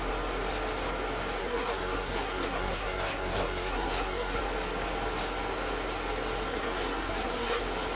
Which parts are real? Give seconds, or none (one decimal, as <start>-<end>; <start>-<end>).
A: 0.0-1.4; 4.4-6.5; 7.6-8.0